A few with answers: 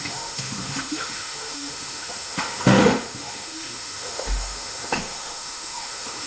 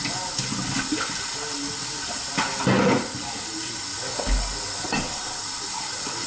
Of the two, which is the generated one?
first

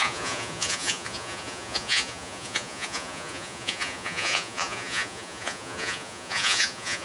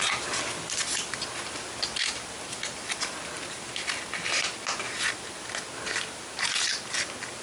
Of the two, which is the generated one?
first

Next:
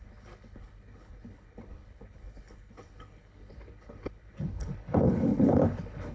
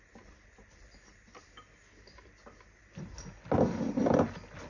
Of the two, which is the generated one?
first